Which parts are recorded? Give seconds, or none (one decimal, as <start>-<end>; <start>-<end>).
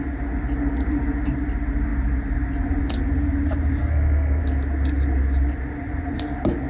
0.0-3.8; 4.4-6.7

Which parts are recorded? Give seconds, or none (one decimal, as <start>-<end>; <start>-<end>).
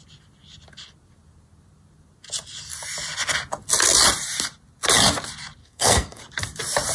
0.0-5.6; 6.2-6.9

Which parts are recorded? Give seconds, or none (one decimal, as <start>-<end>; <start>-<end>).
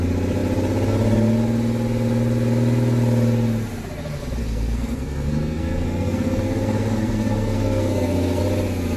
0.0-4.4; 8.4-9.0